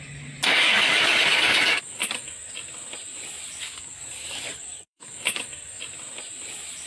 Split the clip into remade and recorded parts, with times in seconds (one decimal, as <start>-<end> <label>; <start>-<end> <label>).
0.0-0.5 recorded; 0.5-2.3 remade; 2.3-3.7 recorded; 3.7-5.8 remade; 5.8-6.9 recorded